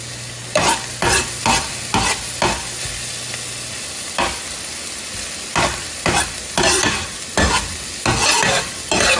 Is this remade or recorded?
recorded